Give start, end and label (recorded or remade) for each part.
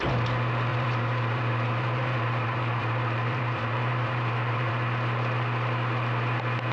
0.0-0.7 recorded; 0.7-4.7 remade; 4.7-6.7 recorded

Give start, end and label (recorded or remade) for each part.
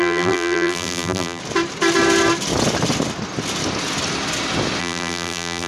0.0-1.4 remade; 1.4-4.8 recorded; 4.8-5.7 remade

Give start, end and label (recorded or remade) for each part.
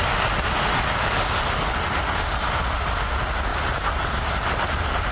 0.0-3.5 recorded; 3.5-5.1 remade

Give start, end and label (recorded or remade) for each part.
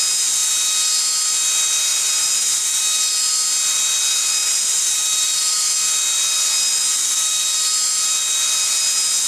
0.0-1.9 recorded; 1.9-2.8 remade; 2.8-4.4 recorded; 4.4-5.7 remade; 5.7-6.9 recorded; 6.9-7.7 remade; 7.7-9.3 recorded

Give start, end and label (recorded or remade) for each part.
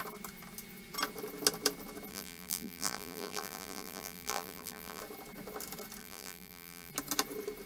0.0-2.1 recorded; 2.1-5.0 remade; 5.0-6.0 recorded; 6.0-6.9 remade; 6.9-7.7 recorded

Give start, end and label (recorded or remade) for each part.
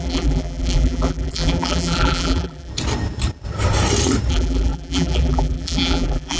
0.0-2.7 remade; 2.7-4.3 recorded; 4.3-6.4 remade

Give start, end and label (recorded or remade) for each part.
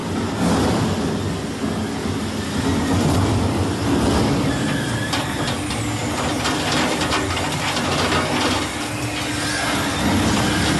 0.0-2.0 recorded; 2.0-2.6 remade; 2.6-10.8 recorded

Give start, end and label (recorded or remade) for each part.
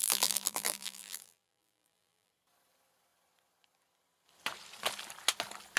0.0-2.3 remade; 2.3-5.8 recorded